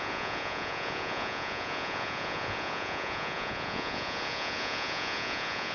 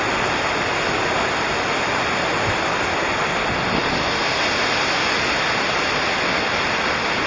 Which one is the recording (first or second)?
second